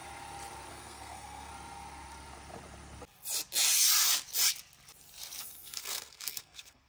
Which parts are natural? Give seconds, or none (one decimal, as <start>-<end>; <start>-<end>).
0.0-0.7; 1.5-5.4